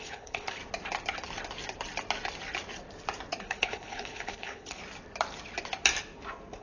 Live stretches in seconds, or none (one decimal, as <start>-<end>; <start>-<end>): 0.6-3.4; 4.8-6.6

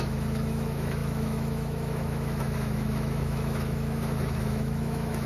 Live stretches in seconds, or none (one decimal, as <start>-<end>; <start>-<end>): none

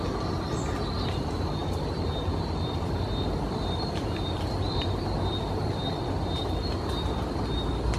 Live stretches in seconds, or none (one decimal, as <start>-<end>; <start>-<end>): 0.0-8.0